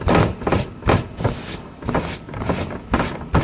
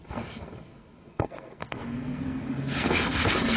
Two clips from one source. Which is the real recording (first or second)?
first